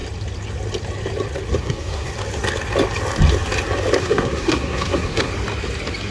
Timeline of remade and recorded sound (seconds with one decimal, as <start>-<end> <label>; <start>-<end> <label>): 0.0-1.6 recorded; 1.6-2.1 remade; 2.1-4.0 recorded; 4.0-5.3 remade; 5.3-6.1 recorded